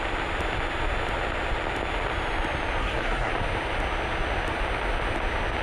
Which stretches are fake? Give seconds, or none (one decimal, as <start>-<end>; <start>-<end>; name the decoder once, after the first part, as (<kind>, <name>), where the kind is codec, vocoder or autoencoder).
2.8-3.3 (codec, SNAC)